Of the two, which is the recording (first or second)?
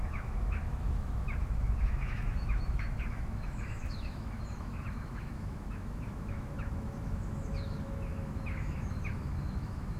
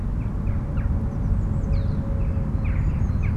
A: second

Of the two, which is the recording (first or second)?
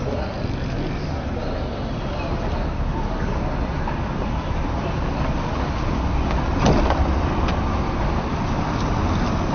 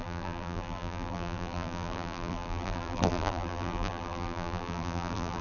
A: first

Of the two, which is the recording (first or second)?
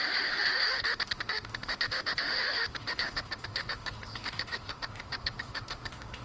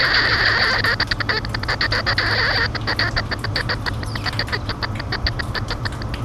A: second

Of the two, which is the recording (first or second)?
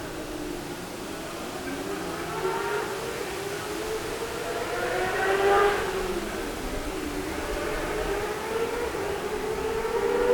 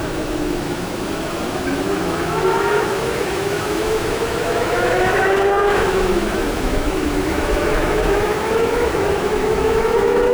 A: first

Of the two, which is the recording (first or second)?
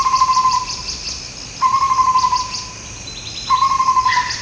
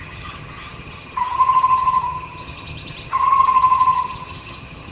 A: first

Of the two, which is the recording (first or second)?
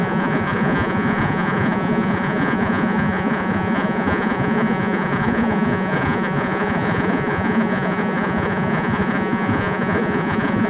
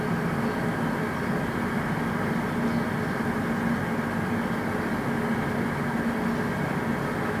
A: second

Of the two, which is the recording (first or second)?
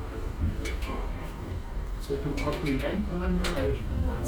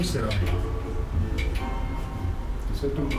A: second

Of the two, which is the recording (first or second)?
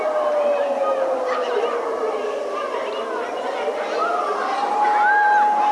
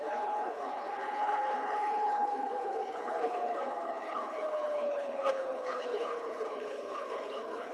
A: first